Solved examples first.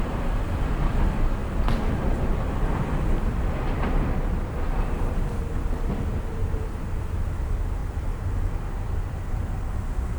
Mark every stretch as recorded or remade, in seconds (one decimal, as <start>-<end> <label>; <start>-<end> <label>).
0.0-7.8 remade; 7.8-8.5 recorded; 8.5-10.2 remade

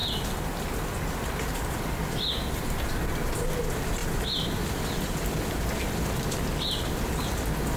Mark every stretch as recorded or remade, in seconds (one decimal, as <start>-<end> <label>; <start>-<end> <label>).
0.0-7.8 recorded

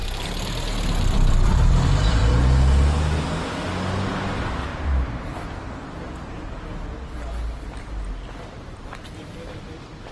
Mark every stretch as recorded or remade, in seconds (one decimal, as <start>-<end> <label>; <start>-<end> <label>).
0.0-2.3 remade; 2.3-4.7 recorded; 4.7-5.3 remade; 5.3-10.1 recorded

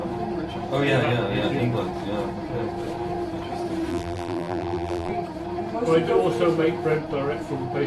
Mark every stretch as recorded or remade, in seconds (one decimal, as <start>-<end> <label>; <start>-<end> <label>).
0.0-3.9 recorded; 3.9-5.1 remade; 5.1-7.9 recorded